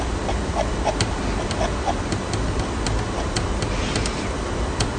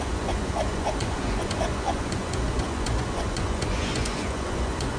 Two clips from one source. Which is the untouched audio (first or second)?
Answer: first